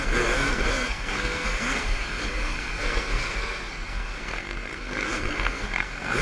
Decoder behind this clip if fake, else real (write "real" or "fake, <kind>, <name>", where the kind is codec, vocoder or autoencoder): fake, codec, SNAC